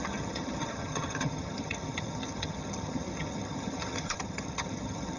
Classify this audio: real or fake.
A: fake